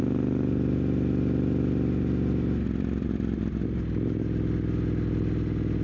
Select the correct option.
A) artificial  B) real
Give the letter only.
B